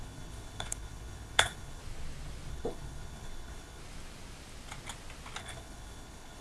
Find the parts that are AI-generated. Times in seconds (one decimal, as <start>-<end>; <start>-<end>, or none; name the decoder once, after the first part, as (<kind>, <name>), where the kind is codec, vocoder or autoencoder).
0.0-1.8 (codec, HILCodec); 2.5-3.8; 5.4-6.4